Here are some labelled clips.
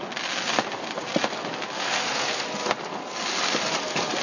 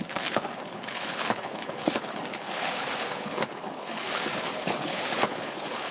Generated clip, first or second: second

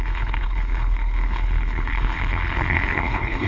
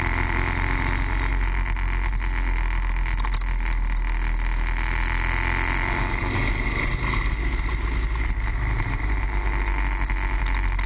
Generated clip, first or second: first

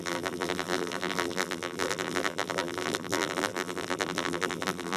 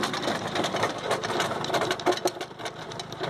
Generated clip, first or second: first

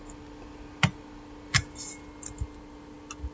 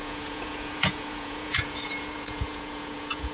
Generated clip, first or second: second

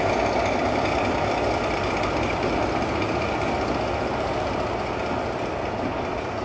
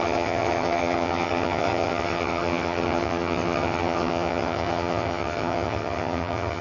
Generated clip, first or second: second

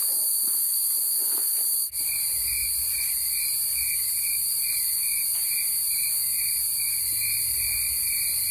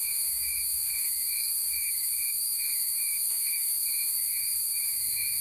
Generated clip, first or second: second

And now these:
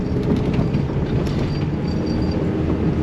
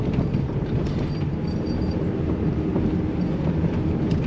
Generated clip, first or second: second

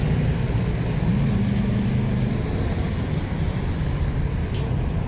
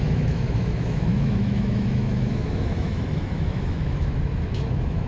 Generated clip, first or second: second